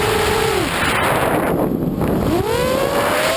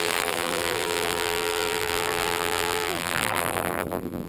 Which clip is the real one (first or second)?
first